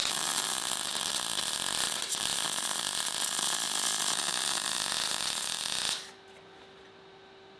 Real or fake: real